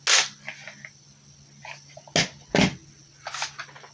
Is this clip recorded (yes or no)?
yes